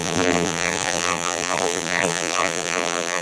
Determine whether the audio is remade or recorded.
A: remade